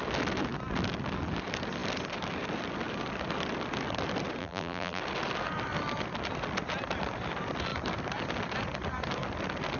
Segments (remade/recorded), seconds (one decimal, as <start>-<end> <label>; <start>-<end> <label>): 0.0-4.4 recorded; 4.4-5.0 remade; 5.0-9.8 recorded